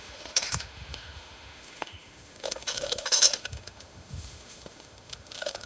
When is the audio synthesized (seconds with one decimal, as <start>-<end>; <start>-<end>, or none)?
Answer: 0.0-5.7